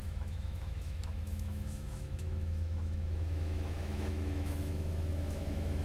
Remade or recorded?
remade